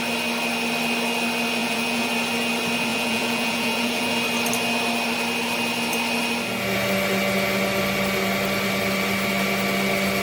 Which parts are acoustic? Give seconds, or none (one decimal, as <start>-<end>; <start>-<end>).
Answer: 0.0-1.6; 2.1-2.9; 4.1-10.2